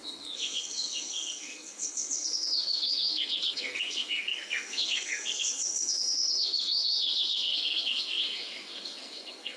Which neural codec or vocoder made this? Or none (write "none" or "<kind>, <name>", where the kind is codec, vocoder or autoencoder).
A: codec, SNAC